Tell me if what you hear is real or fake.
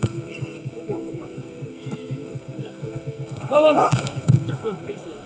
fake